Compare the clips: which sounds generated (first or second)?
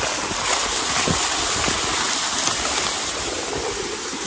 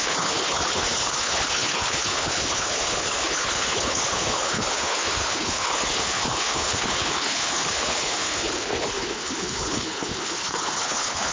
second